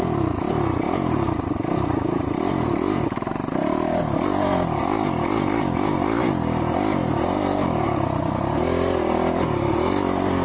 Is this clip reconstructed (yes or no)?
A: no